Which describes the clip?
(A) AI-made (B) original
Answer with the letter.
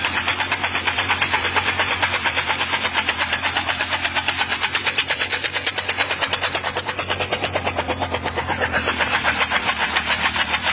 A